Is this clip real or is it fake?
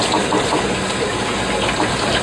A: real